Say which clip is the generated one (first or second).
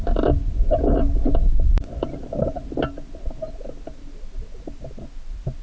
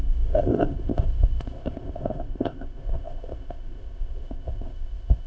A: second